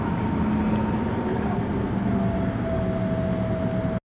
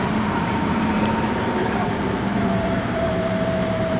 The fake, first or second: second